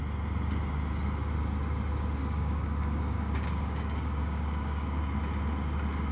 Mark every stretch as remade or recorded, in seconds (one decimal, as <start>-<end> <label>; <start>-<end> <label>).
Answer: 0.0-2.2 recorded; 2.2-5.0 remade; 5.0-6.1 recorded